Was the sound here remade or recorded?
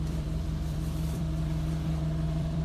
remade